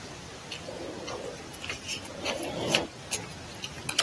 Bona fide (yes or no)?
yes